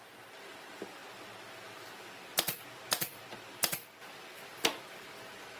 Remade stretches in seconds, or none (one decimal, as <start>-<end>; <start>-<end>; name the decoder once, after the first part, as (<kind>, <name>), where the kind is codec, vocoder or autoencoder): none